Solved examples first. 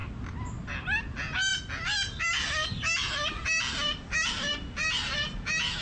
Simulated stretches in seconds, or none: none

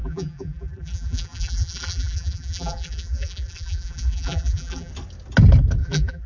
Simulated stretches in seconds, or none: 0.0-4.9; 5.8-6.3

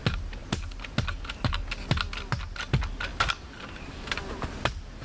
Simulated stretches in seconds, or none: none

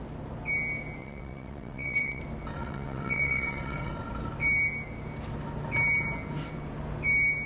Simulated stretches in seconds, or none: 1.0-2.2; 2.6-3.9

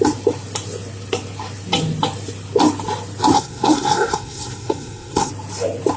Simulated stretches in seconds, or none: 3.3-5.3

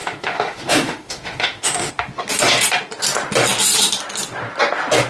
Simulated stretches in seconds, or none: 0.0-1.9

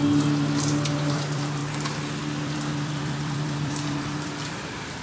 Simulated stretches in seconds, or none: 1.1-1.6; 2.2-5.0